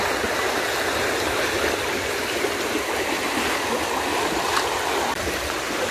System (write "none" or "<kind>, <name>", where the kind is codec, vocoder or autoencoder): none